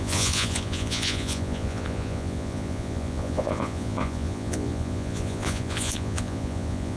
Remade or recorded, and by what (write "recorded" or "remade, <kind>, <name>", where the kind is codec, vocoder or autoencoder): remade, vocoder, Vocos